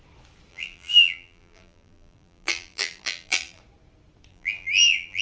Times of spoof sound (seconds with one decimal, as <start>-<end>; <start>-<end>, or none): 0.5-3.6; 4.3-5.2